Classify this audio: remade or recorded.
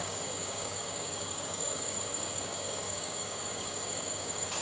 remade